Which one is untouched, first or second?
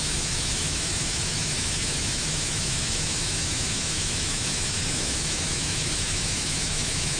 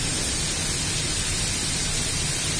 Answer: second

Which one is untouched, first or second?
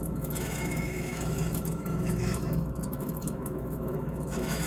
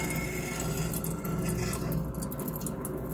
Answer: second